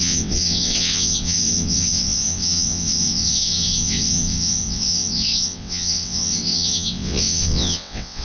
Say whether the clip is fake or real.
fake